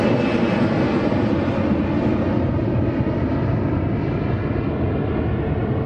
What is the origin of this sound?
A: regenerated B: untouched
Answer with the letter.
B